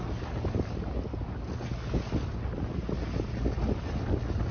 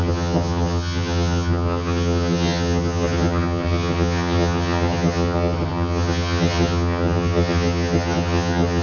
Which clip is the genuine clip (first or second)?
first